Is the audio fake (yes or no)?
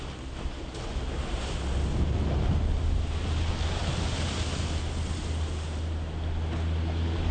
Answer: no